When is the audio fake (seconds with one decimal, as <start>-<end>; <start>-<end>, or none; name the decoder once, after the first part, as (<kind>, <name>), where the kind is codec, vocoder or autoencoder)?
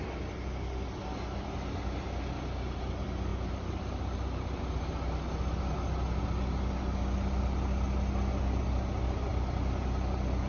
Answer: 3.3-4.6 (vocoder, BigVGAN v2)